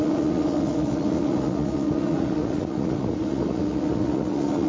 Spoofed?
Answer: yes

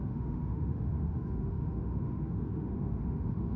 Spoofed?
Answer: yes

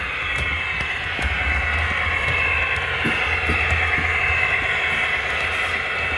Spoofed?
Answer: no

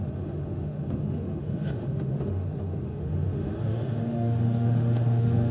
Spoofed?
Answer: yes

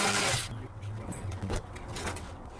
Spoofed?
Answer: yes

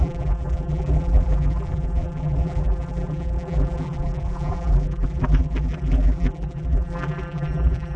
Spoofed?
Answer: yes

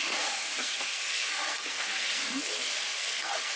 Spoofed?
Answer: yes